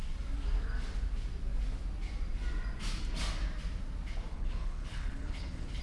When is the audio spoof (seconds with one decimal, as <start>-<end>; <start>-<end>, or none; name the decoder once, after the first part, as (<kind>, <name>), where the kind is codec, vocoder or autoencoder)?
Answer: 4.3-5.8 (codec, HILCodec)